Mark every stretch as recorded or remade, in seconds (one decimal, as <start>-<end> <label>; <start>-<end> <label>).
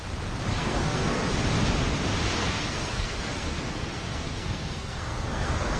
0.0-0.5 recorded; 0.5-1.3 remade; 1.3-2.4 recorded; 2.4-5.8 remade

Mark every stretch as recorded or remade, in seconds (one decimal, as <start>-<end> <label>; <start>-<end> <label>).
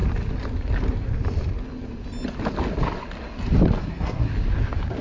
0.0-3.8 recorded; 3.8-4.3 remade; 4.3-5.0 recorded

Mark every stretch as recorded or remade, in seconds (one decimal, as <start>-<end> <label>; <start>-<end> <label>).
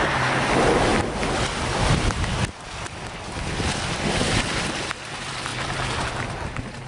0.0-6.9 recorded